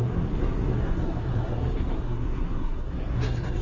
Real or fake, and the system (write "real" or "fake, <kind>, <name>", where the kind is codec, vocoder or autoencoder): fake, codec, SNAC